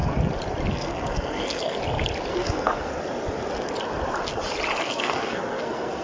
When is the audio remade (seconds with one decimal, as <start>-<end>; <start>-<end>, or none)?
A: 0.7-1.8; 2.3-2.9; 4.8-6.0